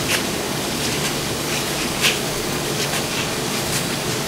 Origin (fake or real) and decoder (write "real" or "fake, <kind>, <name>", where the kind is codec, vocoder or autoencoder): fake, codec, DAC